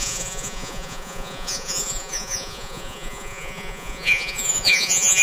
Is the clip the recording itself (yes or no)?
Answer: no